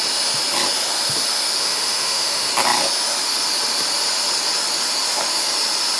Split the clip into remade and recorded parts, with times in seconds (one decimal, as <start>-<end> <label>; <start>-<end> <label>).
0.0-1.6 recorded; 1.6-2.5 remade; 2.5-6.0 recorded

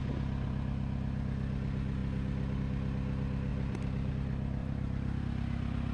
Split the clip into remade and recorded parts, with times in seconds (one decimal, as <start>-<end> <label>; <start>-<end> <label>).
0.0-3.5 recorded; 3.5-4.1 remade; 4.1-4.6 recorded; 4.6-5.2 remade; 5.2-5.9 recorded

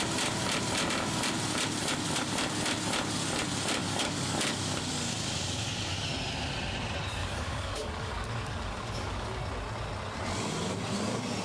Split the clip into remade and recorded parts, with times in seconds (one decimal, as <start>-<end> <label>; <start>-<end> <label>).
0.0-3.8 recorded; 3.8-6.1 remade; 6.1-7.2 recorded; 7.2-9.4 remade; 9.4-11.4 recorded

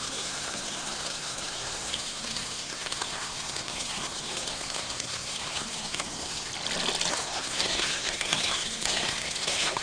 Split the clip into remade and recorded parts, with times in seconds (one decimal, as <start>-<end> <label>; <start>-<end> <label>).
0.0-6.5 remade; 6.5-7.1 recorded; 7.1-9.8 remade

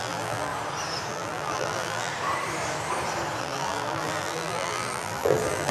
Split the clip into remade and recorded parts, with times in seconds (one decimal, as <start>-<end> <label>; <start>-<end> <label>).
0.0-0.5 remade; 0.5-1.1 recorded; 1.1-2.1 remade; 2.1-3.4 recorded; 3.4-5.7 remade